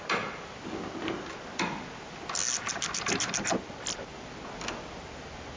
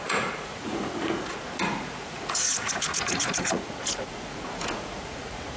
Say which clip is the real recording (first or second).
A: first